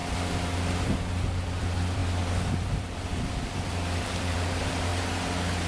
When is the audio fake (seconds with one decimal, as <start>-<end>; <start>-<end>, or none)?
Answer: 1.6-2.0; 2.5-4.9